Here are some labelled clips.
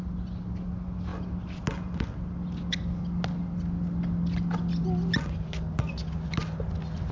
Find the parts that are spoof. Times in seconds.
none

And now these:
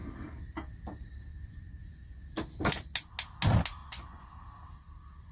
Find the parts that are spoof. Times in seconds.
1.3-2.2 (vocoder, Vocos); 3.8-4.3

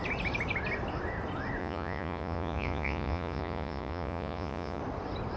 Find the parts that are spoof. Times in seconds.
1.6-4.8 (vocoder, Vocos)